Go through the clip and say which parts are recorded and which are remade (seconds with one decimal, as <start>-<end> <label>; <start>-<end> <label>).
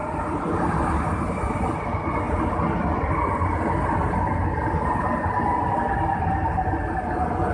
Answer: 0.0-7.5 recorded